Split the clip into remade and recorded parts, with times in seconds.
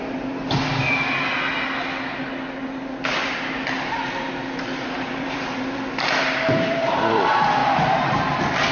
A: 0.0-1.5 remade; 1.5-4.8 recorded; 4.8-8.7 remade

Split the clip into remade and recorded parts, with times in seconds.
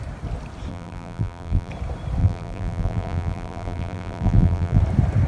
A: 0.0-0.7 recorded; 0.7-1.7 remade; 1.7-2.2 recorded; 2.2-4.8 remade; 4.8-5.3 recorded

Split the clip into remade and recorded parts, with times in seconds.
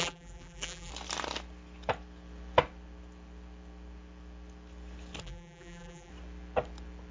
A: 0.0-0.9 remade; 0.9-5.2 recorded; 5.2-6.1 remade; 6.1-7.1 recorded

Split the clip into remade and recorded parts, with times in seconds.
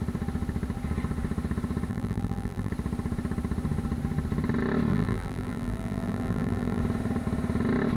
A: 0.0-1.9 recorded; 1.9-2.7 remade; 2.7-4.9 recorded; 4.9-6.8 remade; 6.8-8.0 recorded